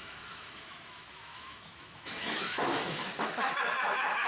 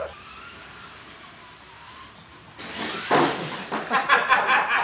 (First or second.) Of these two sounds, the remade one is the first